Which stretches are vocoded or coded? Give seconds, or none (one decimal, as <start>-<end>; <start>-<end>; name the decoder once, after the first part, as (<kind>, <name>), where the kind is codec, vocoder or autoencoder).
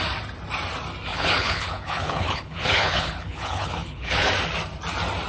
1.1-4.3 (codec, HILCodec)